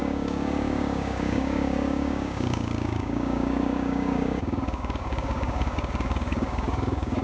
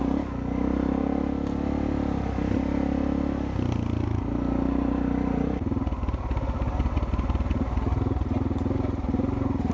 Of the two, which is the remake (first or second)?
first